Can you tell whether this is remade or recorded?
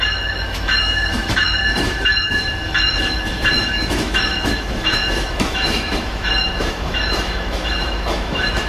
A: remade